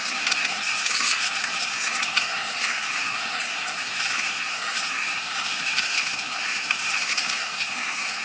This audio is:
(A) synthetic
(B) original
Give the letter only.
A